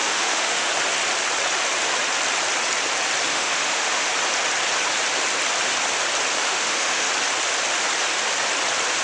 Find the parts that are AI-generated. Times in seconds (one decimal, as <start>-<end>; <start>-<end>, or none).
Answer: 0.0-0.7; 3.3-4.1; 6.4-7.1